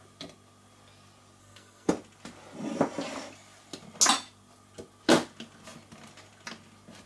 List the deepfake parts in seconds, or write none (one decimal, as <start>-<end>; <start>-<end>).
1.4-1.9